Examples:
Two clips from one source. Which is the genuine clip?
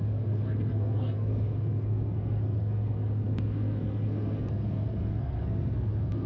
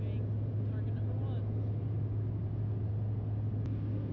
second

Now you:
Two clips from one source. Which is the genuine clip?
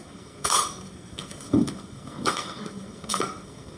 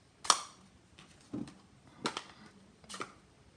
second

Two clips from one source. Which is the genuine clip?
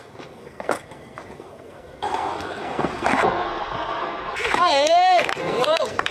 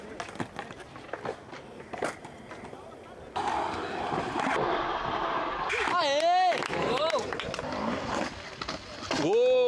second